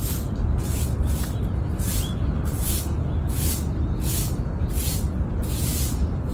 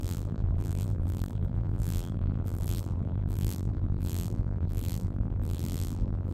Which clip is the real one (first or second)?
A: first